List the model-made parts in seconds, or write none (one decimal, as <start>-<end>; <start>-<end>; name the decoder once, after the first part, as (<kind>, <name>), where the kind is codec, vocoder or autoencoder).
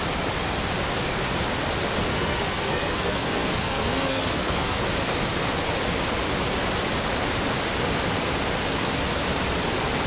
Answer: 2.1-4.8 (codec, SNAC)